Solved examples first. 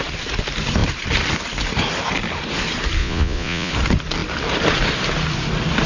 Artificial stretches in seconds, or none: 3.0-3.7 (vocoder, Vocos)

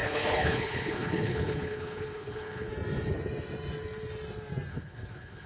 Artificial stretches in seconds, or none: 0.0-2.7 (codec, HILCodec); 4.7-5.5

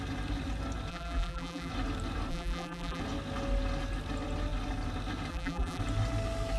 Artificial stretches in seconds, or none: 0.9-1.7 (vocoder, BigVGAN v2); 2.3-3.0; 5.3-5.8

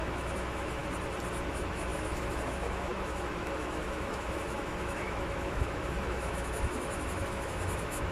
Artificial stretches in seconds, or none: 0.0-0.8 (autoencoder, DAC-VAE); 1.5-8.1